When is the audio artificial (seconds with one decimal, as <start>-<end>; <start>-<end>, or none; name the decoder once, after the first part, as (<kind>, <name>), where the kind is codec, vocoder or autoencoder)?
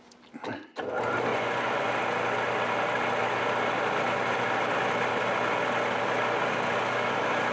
1.3-1.9 (vocoder, Vocos)